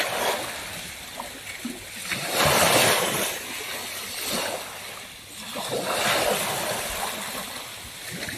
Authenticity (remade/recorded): recorded